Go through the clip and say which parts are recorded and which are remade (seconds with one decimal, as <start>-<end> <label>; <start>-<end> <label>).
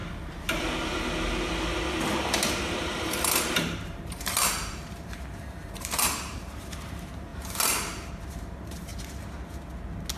0.0-2.2 recorded; 2.2-8.9 remade; 8.9-10.2 recorded